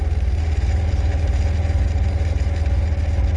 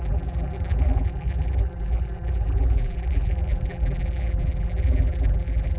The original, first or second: first